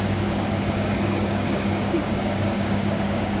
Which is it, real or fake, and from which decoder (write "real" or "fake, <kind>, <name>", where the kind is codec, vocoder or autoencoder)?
fake, codec, DAC